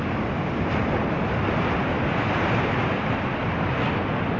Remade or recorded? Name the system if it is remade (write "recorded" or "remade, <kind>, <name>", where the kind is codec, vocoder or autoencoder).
recorded